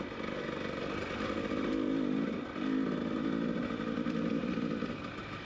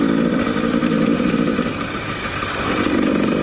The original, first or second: first